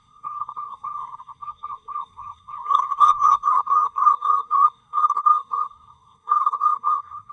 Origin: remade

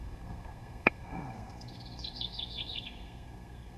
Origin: remade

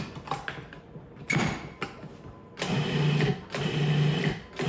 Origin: recorded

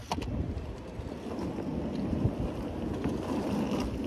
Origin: recorded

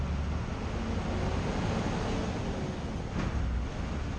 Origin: recorded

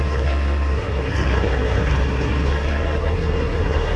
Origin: remade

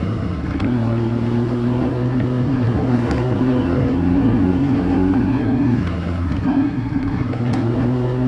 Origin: remade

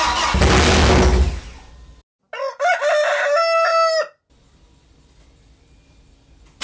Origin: recorded